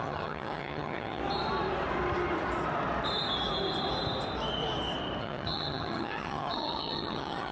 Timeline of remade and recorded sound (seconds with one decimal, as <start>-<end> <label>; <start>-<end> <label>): 0.0-1.2 remade; 1.2-5.2 recorded; 5.2-7.5 remade

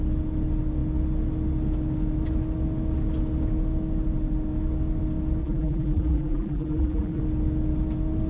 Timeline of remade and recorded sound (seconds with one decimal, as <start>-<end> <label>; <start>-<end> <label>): 0.0-5.4 recorded; 5.4-7.2 remade; 7.2-8.3 recorded